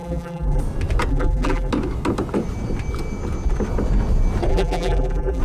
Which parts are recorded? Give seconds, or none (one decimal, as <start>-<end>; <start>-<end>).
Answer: 0.6-1.1; 1.7-4.5